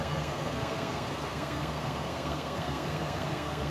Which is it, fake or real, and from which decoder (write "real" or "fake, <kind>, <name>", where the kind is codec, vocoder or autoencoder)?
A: fake, codec, SNAC